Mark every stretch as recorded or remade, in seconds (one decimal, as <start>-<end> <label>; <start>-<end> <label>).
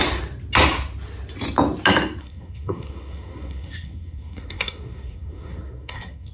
0.0-2.2 recorded; 2.2-6.3 remade